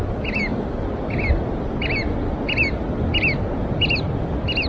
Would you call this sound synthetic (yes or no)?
no